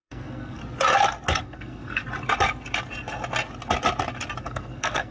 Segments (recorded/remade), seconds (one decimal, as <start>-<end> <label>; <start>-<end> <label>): 0.0-0.6 remade; 0.6-1.4 recorded; 1.4-2.0 remade; 2.0-4.4 recorded; 4.4-5.1 remade